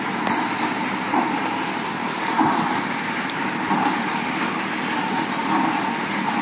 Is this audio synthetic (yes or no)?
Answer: no